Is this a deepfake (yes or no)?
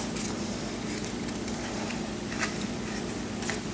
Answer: no